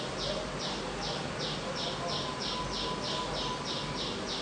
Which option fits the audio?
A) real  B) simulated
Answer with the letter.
A